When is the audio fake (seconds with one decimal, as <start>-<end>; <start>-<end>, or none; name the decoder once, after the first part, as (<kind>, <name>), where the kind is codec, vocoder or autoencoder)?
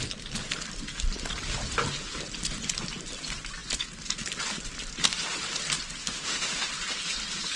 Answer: 6.0-6.7 (autoencoder, DAC-VAE)